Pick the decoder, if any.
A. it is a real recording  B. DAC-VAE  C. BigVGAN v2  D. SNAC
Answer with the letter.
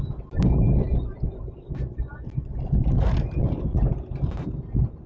A